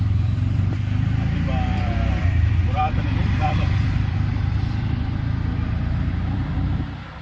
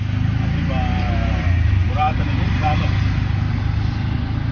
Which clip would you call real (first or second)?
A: second